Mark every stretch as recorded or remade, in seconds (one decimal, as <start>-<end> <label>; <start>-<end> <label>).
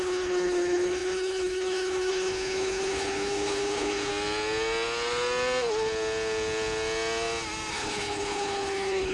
0.0-4.1 remade; 4.1-7.7 recorded; 7.7-9.1 remade